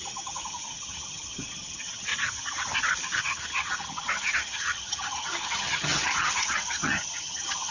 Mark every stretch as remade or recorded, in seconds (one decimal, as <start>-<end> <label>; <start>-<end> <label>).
0.0-2.1 remade; 2.1-3.2 recorded; 3.2-7.7 remade